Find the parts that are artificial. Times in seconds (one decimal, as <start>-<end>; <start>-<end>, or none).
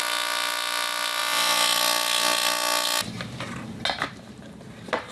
none